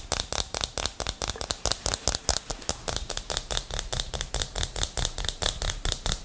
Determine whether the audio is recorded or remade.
recorded